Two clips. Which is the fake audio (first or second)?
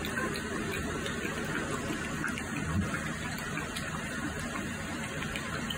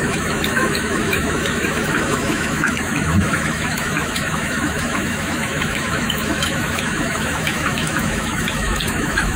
second